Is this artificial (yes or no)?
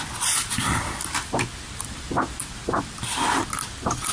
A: no